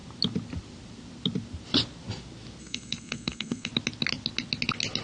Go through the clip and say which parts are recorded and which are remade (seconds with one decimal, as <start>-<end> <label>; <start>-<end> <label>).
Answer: 0.0-2.6 recorded; 2.6-3.7 remade; 3.7-5.0 recorded